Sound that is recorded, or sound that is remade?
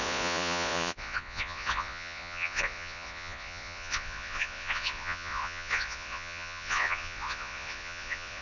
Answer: remade